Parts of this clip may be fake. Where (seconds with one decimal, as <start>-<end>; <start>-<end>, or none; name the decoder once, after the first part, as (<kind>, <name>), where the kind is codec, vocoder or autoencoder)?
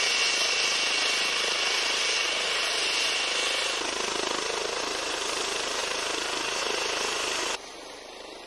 none